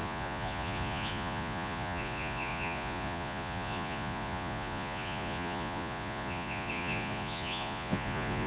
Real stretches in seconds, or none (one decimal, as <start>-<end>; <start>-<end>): none